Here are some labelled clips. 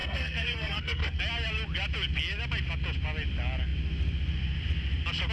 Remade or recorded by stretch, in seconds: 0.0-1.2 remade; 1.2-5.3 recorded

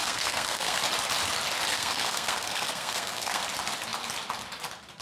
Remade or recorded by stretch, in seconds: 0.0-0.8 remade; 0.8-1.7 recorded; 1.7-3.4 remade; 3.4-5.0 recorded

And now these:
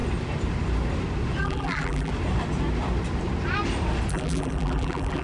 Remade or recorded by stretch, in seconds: 0.0-1.4 recorded; 1.4-2.1 remade; 2.1-4.1 recorded; 4.1-5.2 remade

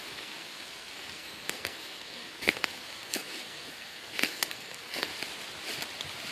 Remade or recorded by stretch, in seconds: 0.0-5.1 remade; 5.1-6.3 recorded

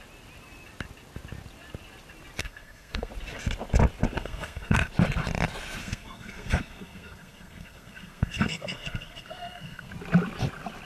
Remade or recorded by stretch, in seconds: 0.0-2.4 recorded; 2.4-3.1 remade; 3.1-4.2 recorded; 4.2-4.9 remade; 4.9-5.8 recorded; 5.8-9.9 remade; 9.9-10.9 recorded